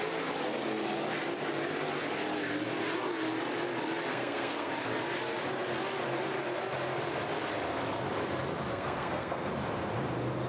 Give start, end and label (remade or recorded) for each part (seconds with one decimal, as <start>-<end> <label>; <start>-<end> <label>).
0.0-4.1 recorded; 4.1-4.7 remade; 4.7-8.7 recorded; 8.7-9.5 remade; 9.5-10.5 recorded